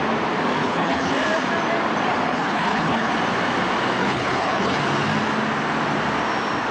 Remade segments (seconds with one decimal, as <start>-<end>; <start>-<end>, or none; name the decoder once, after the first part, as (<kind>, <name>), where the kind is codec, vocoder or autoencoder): 0.6-1.1 (codec, HILCodec); 2.3-3.1; 4.0-4.8